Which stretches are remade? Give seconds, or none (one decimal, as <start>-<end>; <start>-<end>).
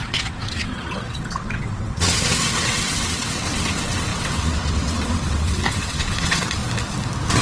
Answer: 0.0-6.6